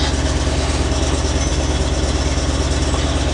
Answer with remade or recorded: recorded